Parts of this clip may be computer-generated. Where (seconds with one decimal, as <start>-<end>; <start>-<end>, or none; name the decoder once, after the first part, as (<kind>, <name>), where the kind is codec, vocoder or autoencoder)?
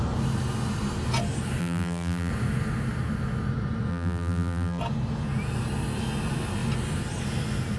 1.6-2.3 (vocoder, BigVGAN v2); 3.9-4.8